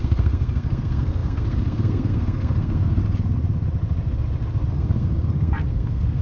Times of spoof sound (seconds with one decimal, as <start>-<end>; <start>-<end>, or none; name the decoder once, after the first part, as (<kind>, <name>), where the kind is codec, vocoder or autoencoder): 0.0-3.0 (codec, SNAC); 4.7-6.2